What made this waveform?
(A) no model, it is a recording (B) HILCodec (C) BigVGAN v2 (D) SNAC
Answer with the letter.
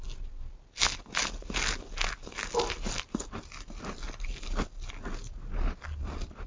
A